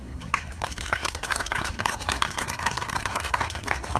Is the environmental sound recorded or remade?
remade